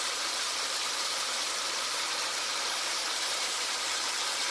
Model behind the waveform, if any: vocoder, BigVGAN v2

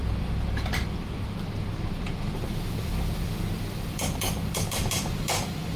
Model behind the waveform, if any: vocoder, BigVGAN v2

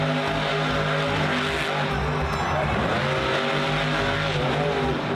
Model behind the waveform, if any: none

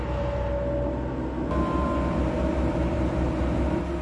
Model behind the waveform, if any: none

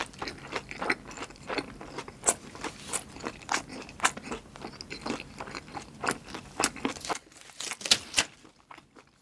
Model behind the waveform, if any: none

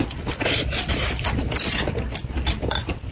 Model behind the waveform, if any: vocoder, BigVGAN v2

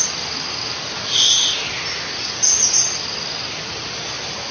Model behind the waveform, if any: none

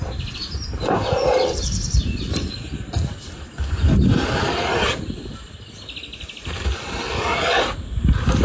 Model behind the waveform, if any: none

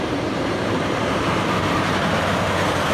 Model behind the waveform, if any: vocoder, BigVGAN v2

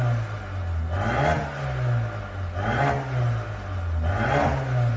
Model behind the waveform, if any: none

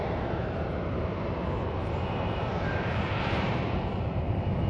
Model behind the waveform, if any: vocoder, BigVGAN v2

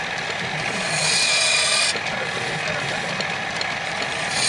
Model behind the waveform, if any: none